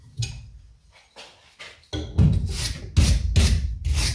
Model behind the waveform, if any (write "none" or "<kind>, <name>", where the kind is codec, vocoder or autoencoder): none